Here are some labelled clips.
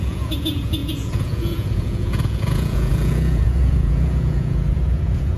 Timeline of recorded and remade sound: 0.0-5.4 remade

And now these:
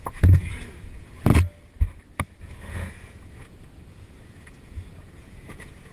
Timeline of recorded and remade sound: 0.0-1.3 remade; 1.3-2.4 recorded; 2.4-5.9 remade

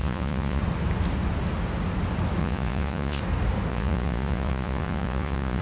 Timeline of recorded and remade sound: 0.0-0.6 remade; 0.6-2.4 recorded; 2.4-3.2 remade; 3.2-3.7 recorded; 3.7-5.6 remade

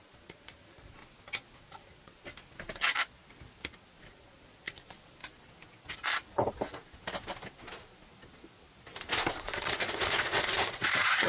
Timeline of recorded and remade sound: 0.0-1.0 remade; 1.0-1.6 recorded; 1.6-2.3 remade; 2.3-4.0 recorded; 4.0-5.2 remade; 5.2-9.3 recorded; 9.3-11.3 remade

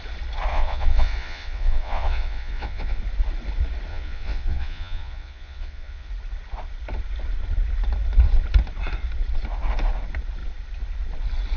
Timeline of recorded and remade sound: 0.0-0.5 recorded; 0.5-3.0 remade; 3.0-3.9 recorded; 3.9-6.1 remade; 6.1-11.6 recorded